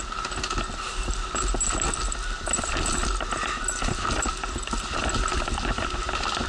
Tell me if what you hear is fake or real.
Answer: real